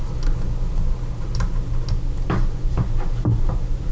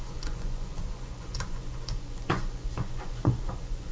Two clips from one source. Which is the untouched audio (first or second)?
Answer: first